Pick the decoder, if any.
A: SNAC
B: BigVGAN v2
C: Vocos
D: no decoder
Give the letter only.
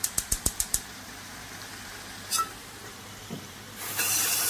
B